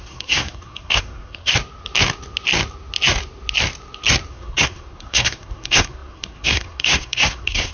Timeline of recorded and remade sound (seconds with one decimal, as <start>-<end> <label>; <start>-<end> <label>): 0.0-1.5 remade; 1.5-4.3 recorded; 4.3-7.7 remade